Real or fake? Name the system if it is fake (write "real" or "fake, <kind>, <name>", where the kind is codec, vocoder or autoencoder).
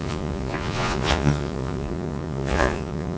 fake, vocoder, Vocos